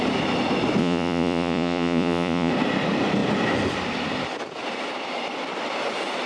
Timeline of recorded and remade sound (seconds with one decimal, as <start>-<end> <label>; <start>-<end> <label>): 0.0-0.8 recorded; 0.8-2.5 remade; 2.5-6.3 recorded